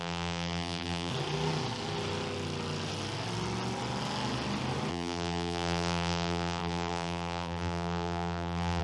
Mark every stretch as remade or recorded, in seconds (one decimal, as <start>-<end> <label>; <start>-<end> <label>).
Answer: 0.0-1.1 remade; 1.1-4.9 recorded; 4.9-8.8 remade